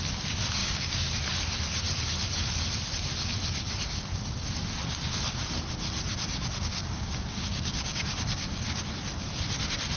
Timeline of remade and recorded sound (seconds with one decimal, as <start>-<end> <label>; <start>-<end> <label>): 0.0-0.6 recorded; 0.6-1.1 remade; 1.1-6.7 recorded; 6.7-8.8 remade; 8.8-10.0 recorded